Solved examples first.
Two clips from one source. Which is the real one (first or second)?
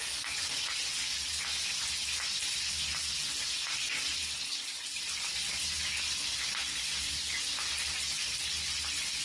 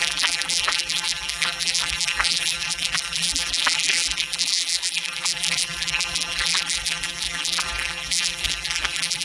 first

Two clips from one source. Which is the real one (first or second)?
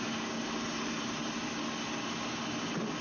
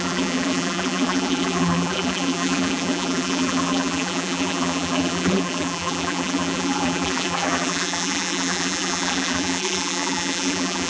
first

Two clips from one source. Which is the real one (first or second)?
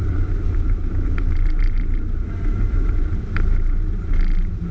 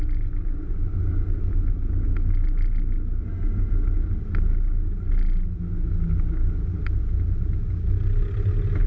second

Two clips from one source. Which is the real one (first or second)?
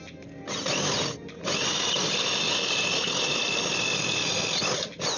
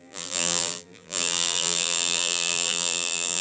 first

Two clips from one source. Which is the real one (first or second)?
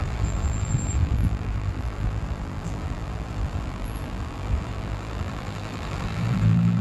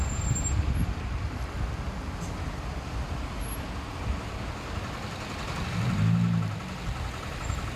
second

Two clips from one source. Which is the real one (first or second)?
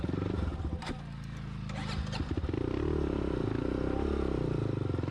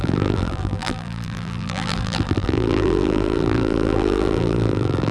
first